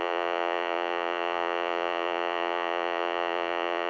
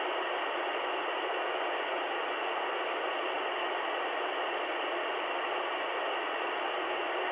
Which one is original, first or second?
second